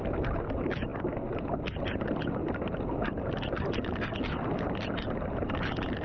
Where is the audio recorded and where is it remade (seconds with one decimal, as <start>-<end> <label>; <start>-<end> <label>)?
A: 0.0-6.0 recorded